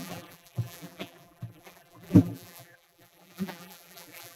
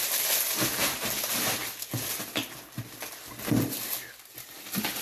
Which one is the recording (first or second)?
second